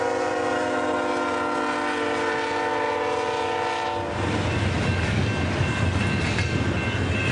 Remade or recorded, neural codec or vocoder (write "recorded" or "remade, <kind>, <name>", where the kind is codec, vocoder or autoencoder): recorded